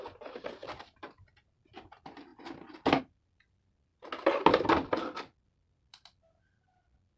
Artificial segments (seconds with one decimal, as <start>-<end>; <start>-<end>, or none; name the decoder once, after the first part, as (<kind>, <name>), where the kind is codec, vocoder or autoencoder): 0.0-2.3 (vocoder, BigVGAN v2); 3.0-3.9; 5.5-7.2